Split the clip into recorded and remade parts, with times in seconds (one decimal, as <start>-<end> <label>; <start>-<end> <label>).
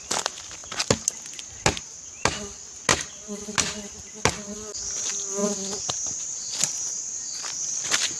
0.0-8.2 recorded